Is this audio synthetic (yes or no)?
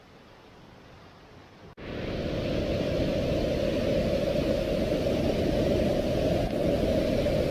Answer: no